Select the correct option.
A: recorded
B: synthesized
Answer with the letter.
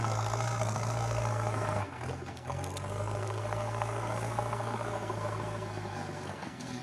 B